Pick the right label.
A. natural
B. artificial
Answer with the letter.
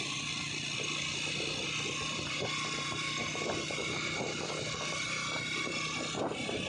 A